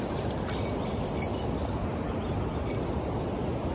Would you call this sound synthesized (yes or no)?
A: no